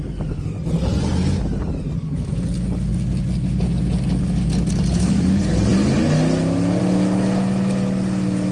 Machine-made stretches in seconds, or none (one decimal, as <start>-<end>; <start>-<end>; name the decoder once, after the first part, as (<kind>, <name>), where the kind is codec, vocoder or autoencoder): none